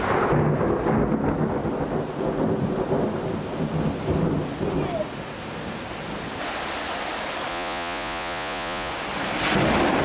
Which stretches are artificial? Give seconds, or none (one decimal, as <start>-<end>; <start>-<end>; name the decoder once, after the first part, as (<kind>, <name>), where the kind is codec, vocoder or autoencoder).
7.5-8.9 (vocoder, Vocos)